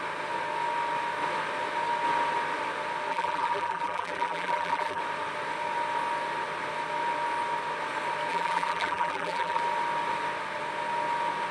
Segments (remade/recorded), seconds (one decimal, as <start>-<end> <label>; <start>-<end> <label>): 0.0-3.1 recorded; 3.1-5.0 remade; 5.0-8.3 recorded; 8.3-9.6 remade; 9.6-11.5 recorded